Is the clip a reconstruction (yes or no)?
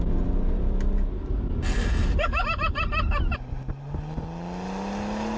no